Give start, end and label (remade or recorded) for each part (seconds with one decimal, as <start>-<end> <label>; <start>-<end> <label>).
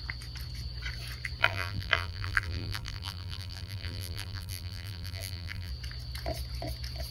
0.0-1.4 recorded; 1.4-5.7 remade; 5.7-7.1 recorded